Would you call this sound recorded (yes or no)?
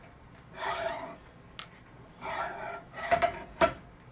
yes